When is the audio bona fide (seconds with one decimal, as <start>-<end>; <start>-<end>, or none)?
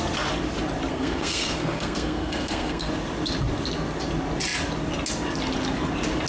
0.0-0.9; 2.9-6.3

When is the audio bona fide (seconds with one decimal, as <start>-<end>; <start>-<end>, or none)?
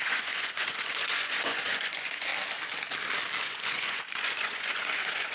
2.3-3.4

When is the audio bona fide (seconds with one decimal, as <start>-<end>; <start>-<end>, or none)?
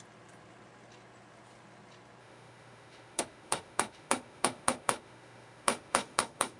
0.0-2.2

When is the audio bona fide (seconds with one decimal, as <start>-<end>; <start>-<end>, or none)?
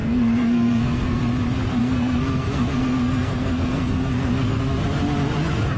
1.2-1.8; 4.6-5.8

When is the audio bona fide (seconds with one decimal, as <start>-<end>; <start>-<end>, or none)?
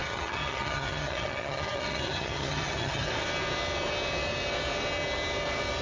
3.1-5.8